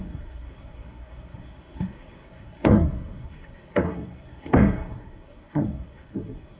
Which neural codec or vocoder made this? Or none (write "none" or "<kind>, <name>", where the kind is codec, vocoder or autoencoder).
codec, SNAC